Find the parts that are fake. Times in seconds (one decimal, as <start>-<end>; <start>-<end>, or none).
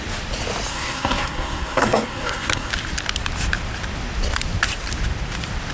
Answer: 0.7-2.7